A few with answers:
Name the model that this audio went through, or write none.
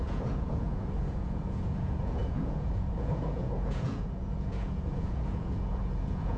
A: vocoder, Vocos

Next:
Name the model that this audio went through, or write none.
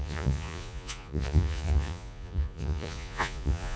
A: vocoder, Vocos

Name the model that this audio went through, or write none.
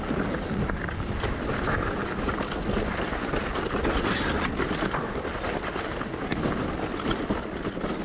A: none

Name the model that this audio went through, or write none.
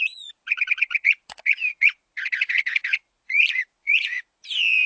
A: vocoder, Vocos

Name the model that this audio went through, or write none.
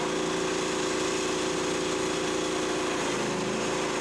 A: none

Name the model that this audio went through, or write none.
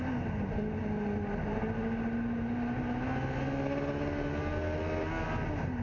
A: none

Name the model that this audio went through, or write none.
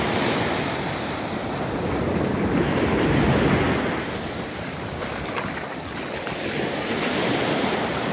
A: none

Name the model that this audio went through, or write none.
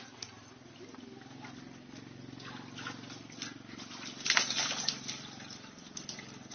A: none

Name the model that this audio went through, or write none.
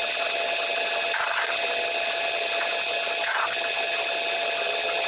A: none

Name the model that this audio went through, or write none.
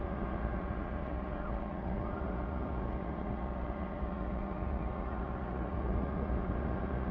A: vocoder, Vocos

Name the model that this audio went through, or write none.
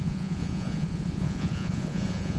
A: vocoder, Vocos